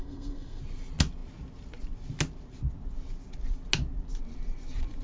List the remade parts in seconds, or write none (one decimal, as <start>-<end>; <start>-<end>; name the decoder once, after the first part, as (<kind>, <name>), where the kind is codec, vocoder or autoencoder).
0.0-0.6 (codec, SNAC)